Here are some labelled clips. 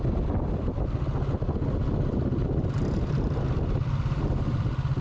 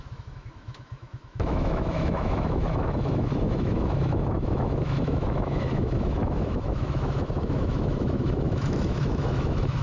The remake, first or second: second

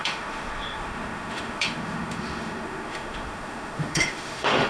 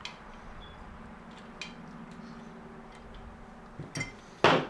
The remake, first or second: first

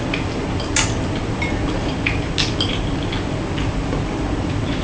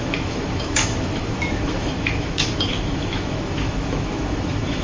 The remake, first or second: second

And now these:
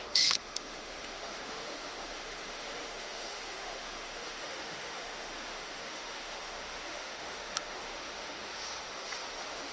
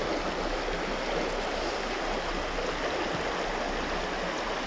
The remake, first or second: first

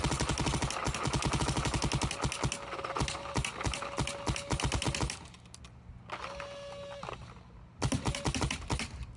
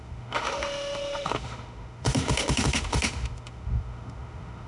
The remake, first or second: second